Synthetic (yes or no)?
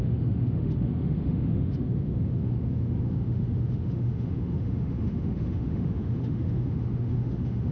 yes